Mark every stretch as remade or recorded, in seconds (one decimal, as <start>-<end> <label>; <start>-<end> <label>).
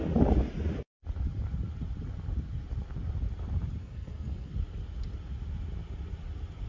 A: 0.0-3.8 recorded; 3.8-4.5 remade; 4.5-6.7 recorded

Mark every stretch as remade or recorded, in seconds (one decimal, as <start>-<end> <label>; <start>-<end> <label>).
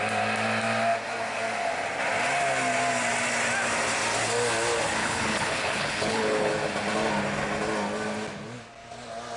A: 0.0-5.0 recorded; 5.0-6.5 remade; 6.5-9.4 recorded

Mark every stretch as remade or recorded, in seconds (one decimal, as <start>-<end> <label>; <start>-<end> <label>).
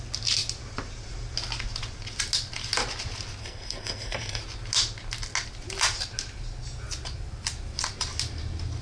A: 0.0-3.4 recorded; 3.4-4.4 remade; 4.4-8.8 recorded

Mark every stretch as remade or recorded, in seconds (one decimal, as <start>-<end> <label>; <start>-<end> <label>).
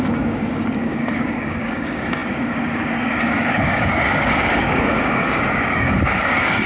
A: 0.0-6.7 remade